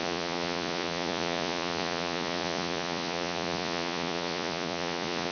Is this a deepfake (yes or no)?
yes